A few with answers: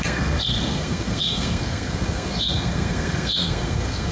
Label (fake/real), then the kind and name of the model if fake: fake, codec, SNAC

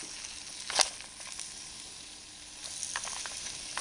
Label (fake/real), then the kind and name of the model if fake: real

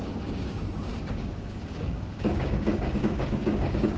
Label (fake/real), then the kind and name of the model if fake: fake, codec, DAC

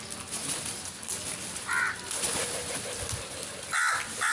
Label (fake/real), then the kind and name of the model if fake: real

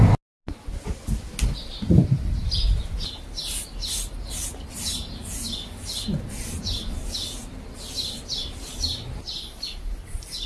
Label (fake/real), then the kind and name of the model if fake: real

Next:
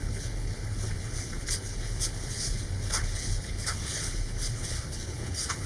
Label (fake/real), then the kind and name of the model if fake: fake, codec, HILCodec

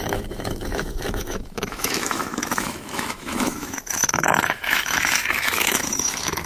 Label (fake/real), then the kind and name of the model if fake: fake, autoencoder, DAC-VAE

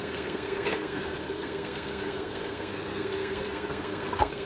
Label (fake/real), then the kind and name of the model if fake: fake, codec, SNAC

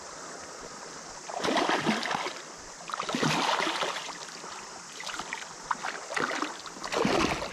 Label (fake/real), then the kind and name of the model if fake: real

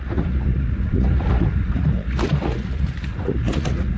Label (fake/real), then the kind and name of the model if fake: fake, vocoder, Vocos